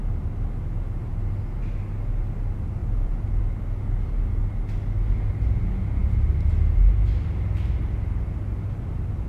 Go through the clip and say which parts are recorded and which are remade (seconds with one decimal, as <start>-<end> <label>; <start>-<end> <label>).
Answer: 0.0-2.8 recorded; 2.8-3.4 remade; 3.4-9.3 recorded